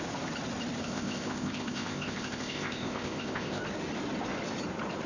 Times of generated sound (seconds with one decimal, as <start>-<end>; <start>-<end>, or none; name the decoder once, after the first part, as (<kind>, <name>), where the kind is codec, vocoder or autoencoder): 0.8-3.6 (codec, ZipCodec)